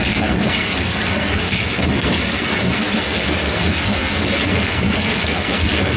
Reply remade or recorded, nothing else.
remade